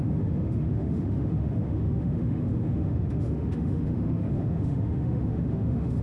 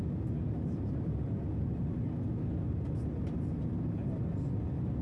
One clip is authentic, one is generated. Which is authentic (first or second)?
second